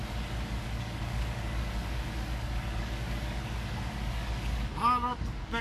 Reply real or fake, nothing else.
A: fake